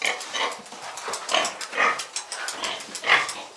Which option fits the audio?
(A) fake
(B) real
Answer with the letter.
B